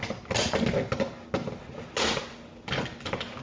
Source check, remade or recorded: recorded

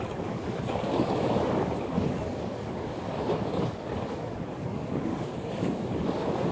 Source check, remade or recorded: remade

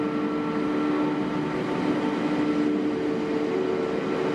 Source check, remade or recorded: recorded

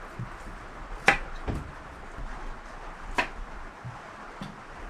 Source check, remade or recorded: recorded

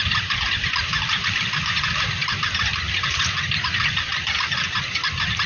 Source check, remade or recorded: recorded